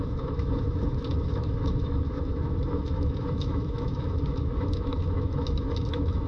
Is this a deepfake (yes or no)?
yes